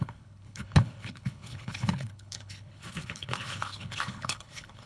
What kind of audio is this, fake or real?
fake